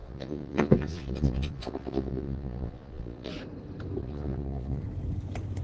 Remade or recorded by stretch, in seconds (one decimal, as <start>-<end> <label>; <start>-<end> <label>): 0.0-3.3 remade; 3.3-4.0 recorded; 4.0-4.8 remade; 4.8-5.6 recorded